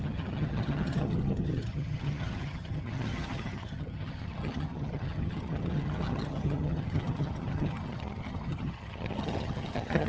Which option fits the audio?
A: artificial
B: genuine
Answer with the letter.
A